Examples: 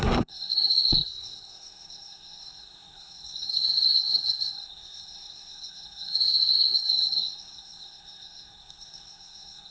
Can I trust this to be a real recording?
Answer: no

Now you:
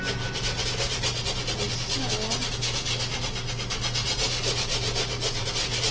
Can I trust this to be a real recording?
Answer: yes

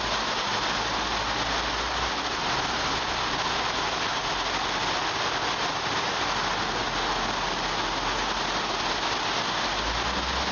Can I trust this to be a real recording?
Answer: yes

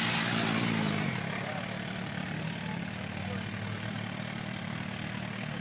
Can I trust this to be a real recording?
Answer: yes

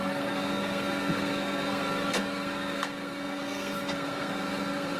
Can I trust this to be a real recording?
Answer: no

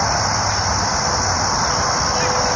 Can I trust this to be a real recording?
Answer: yes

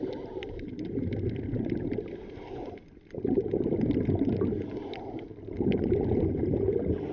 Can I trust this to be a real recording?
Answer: yes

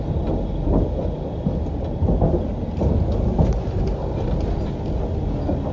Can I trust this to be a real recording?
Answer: yes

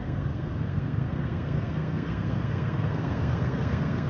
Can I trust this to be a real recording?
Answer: no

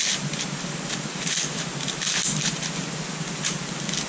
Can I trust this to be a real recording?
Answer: yes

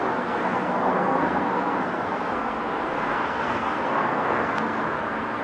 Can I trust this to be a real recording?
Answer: no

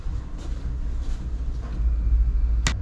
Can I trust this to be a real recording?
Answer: yes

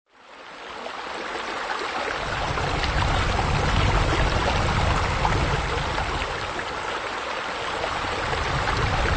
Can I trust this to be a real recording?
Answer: yes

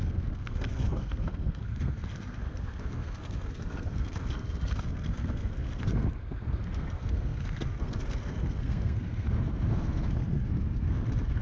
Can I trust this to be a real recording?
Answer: no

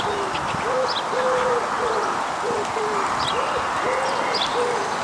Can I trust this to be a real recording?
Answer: yes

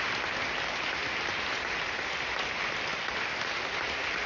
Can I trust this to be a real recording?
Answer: yes